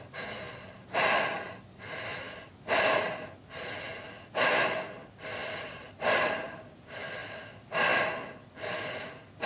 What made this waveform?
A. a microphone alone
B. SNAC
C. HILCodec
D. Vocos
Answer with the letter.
A